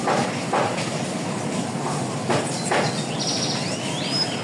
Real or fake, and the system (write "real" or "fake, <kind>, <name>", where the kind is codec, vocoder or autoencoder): real